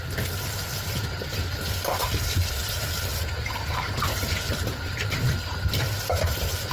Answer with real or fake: real